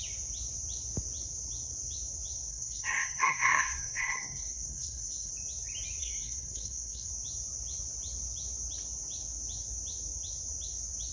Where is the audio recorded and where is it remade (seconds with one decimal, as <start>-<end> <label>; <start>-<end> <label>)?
0.0-2.5 recorded; 2.5-5.3 remade; 5.3-6.0 recorded; 6.0-7.1 remade; 7.1-11.1 recorded